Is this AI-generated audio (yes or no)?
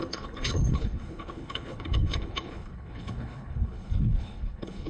yes